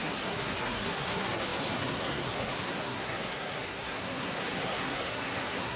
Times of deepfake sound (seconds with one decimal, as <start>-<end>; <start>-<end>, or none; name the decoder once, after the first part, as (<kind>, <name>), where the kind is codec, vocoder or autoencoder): 0.0-5.8 (codec, SNAC)